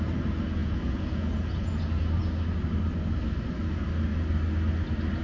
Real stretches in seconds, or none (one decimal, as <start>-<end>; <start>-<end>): 0.0-0.6; 1.8-5.2

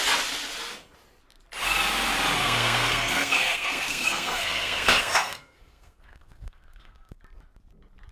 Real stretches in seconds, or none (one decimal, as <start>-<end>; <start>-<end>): 0.0-2.4; 7.2-8.1

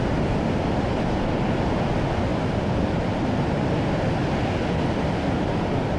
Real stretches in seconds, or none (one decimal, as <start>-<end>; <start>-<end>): 0.0-6.0

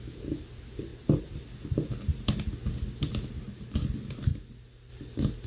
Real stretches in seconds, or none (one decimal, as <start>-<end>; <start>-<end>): 0.0-5.5